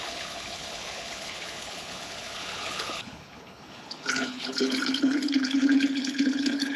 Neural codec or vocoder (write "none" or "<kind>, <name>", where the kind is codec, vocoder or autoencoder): codec, HILCodec